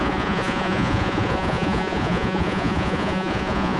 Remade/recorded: remade